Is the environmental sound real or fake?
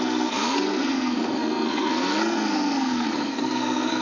fake